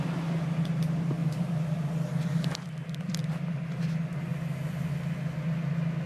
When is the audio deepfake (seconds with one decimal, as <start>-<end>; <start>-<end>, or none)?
1.2-1.8; 2.5-3.8